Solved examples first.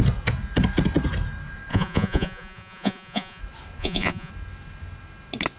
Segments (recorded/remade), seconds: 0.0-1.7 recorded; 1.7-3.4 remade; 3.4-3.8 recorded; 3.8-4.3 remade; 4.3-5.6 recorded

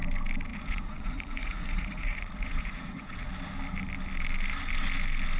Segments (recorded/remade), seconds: 0.0-0.5 recorded; 0.5-3.3 remade; 3.3-5.4 recorded